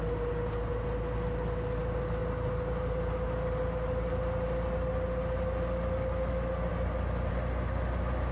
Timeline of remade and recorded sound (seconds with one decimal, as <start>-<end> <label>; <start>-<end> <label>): 0.0-8.3 recorded